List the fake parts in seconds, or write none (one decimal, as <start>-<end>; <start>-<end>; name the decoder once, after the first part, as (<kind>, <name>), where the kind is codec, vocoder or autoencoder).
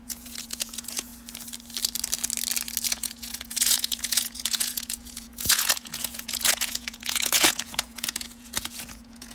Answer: 0.0-1.1 (vocoder, Vocos); 2.9-9.3